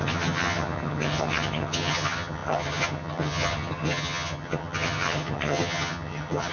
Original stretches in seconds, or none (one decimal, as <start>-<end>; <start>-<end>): none